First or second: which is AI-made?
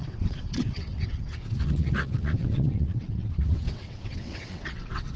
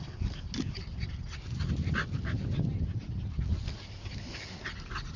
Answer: first